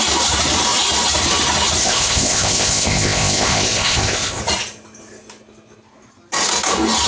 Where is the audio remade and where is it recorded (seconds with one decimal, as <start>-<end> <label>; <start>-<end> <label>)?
0.0-1.8 recorded; 1.8-4.4 remade; 4.4-7.1 recorded